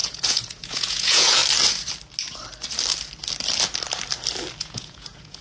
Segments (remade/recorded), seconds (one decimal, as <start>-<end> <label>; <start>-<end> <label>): 0.0-1.4 remade; 1.4-4.6 recorded; 4.6-5.4 remade